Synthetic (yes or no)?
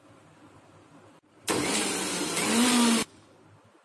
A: yes